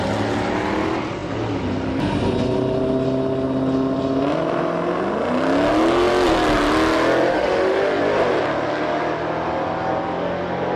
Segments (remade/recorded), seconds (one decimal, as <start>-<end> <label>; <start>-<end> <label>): 0.0-7.3 recorded; 7.3-8.0 remade; 8.0-10.8 recorded